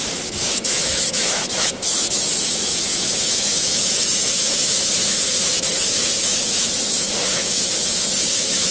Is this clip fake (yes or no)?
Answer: yes